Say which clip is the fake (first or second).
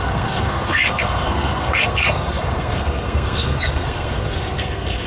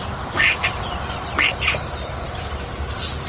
first